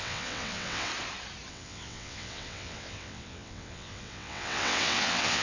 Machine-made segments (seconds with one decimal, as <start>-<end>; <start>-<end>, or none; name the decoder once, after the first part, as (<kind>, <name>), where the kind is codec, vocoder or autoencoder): 0.0-0.9 (vocoder, WaveNeXt); 1.5-5.4